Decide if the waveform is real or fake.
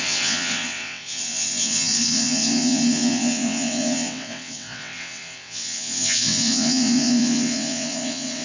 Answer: fake